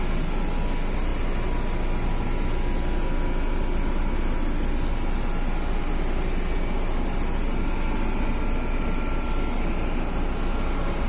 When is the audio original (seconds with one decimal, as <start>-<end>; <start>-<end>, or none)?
0.0-11.1